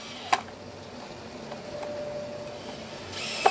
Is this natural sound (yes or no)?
yes